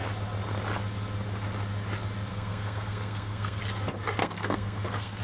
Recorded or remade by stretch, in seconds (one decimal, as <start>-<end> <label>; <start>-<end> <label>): 0.0-2.3 recorded; 2.3-3.6 remade; 3.6-4.2 recorded; 4.2-5.2 remade